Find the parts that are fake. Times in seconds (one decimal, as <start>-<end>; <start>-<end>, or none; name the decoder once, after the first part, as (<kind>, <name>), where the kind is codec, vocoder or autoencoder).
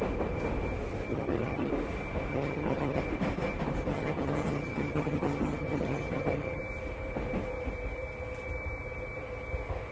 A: 1.1-1.7 (vocoder, HiFi-GAN); 2.3-3.0; 3.9-6.6